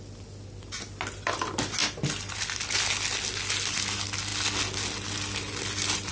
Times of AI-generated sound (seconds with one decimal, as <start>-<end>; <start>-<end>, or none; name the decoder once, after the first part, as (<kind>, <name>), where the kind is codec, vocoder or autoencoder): none